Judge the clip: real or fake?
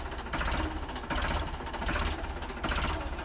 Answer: real